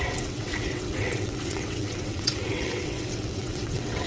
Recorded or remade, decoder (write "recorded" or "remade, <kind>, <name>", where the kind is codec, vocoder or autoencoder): remade, vocoder, WaveNeXt